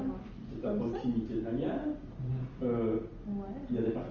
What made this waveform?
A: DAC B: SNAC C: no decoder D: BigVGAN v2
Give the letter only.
C